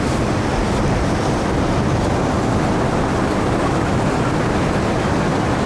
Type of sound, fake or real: real